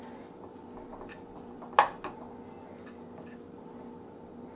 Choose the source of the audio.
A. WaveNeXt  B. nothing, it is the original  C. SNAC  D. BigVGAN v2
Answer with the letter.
B